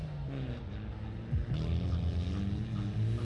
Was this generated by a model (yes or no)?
no